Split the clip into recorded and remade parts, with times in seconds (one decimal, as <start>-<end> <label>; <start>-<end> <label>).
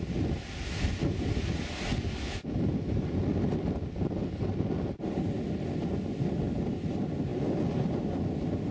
0.0-8.7 recorded